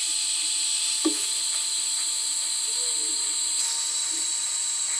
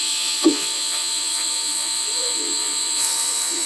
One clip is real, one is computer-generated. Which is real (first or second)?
first